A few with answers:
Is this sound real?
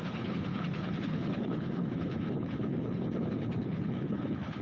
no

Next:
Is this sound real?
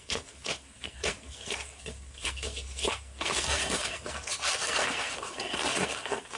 no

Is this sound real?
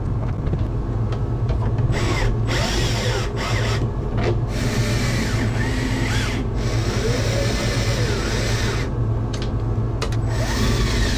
yes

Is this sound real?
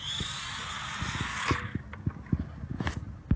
yes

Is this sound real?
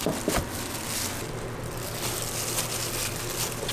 yes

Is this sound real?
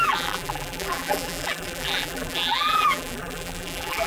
no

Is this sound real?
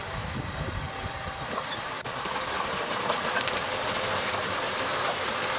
no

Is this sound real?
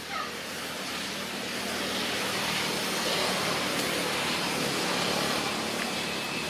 yes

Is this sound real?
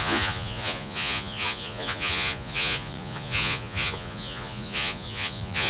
no